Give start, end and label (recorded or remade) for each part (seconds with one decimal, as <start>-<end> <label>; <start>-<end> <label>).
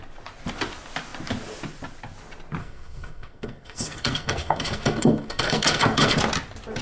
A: 0.0-2.6 recorded; 2.6-6.2 remade; 6.2-6.8 recorded